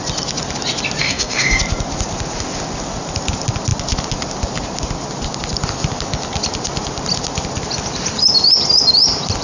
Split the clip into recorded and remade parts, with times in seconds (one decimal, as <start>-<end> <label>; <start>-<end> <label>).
0.0-1.0 recorded; 1.0-1.6 remade; 1.6-9.4 recorded